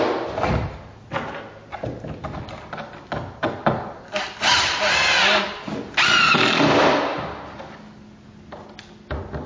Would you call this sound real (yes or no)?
yes